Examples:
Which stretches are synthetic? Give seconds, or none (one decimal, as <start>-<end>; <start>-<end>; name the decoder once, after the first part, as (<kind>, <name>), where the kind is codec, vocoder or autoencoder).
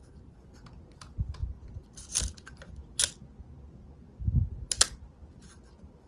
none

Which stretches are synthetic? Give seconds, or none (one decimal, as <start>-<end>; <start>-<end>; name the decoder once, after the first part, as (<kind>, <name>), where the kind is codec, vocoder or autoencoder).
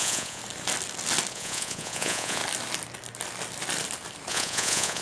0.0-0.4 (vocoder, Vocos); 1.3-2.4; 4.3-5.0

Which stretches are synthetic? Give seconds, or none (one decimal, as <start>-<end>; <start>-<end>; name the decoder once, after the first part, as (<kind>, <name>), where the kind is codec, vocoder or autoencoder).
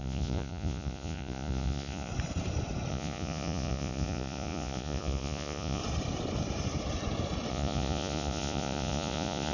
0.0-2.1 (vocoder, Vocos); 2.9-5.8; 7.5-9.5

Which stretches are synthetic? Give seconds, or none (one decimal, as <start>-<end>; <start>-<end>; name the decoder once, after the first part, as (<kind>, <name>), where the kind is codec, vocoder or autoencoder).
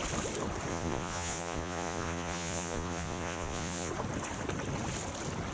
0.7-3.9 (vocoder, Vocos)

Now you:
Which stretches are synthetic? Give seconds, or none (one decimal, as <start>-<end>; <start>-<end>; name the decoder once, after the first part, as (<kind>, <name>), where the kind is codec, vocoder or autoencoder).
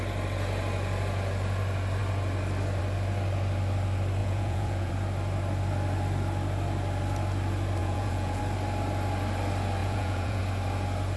4.2-4.9 (vocoder, Vocos); 7.8-8.4; 9.8-10.4